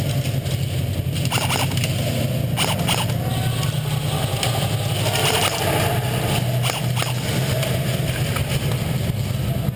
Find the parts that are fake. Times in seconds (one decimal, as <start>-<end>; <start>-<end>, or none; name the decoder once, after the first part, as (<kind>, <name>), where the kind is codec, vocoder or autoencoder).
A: none